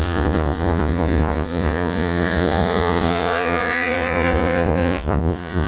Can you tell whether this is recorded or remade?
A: remade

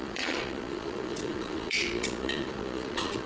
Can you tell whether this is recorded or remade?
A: remade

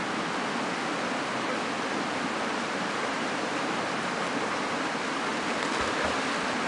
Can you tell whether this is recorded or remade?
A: recorded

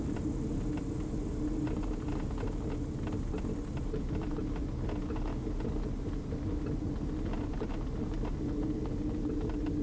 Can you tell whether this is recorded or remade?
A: recorded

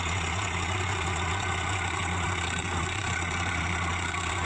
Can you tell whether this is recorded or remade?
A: remade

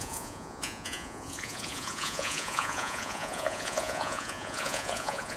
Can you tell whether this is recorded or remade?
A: remade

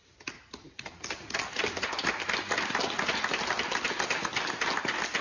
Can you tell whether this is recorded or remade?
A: recorded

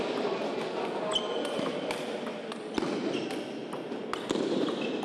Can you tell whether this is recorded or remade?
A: recorded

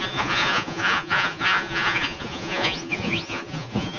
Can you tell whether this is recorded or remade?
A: remade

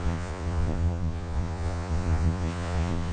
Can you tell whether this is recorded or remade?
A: remade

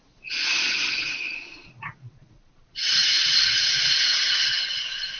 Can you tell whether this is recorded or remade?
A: remade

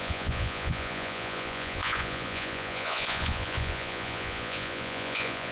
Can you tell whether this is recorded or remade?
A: remade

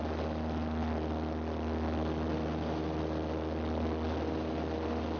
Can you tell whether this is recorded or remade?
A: recorded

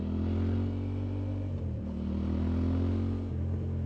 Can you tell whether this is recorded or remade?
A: recorded